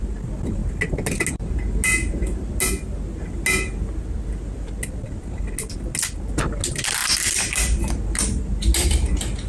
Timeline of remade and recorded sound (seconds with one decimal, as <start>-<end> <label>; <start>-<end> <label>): 0.0-9.5 recorded